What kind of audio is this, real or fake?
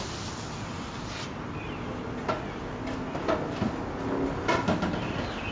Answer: real